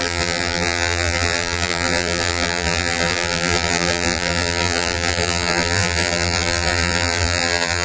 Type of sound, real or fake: fake